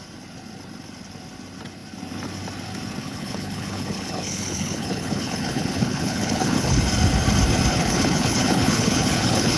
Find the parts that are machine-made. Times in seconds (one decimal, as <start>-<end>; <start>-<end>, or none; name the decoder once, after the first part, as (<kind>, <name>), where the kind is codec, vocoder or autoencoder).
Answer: 3.0-6.8 (codec, HILCodec); 7.7-9.6